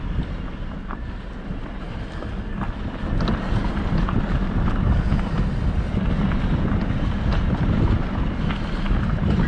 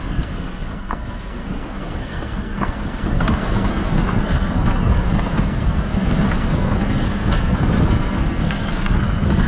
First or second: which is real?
first